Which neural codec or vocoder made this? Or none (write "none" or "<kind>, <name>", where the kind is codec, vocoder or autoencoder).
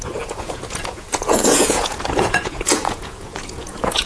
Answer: vocoder, Vocos